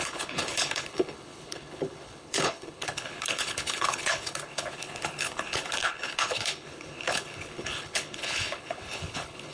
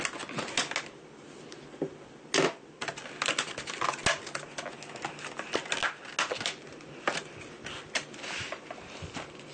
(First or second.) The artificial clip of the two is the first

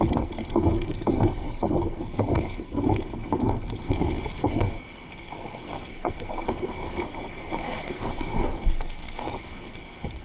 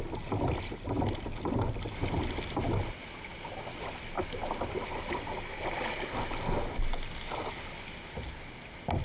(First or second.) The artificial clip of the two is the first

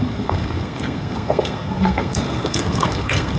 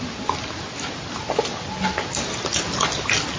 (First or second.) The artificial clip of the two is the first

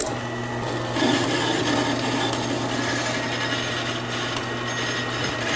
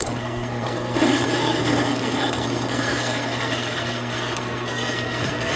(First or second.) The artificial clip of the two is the second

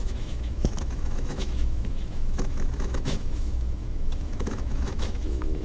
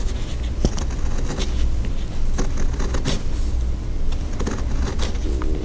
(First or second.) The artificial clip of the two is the first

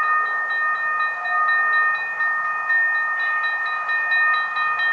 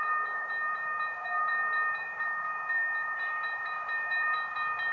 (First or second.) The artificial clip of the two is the second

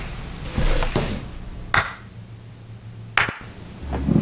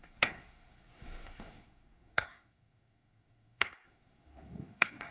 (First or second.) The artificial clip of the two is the second